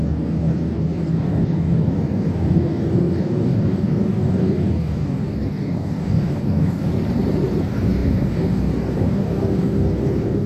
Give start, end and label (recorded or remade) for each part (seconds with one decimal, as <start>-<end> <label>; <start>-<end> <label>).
0.0-6.9 remade; 6.9-7.6 recorded; 7.6-10.5 remade